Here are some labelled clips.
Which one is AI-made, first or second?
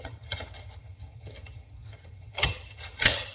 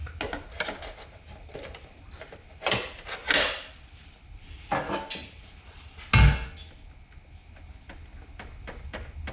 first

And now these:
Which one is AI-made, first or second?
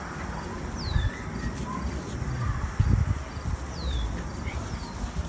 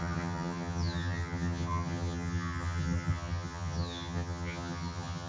second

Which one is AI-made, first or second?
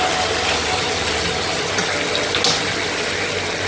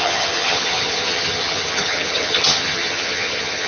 second